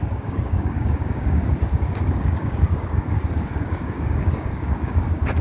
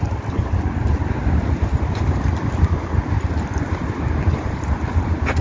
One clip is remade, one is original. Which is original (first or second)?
second